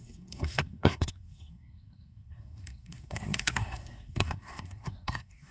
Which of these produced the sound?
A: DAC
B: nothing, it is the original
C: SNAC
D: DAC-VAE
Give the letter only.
C